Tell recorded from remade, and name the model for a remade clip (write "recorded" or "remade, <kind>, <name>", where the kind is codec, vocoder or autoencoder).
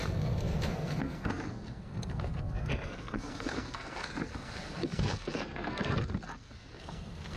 remade, codec, SNAC